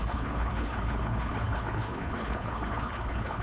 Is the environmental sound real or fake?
fake